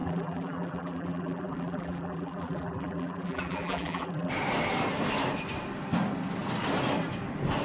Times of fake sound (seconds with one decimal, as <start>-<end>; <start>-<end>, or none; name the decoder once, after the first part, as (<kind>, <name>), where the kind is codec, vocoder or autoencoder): 0.0-4.3 (vocoder, BigVGAN v2)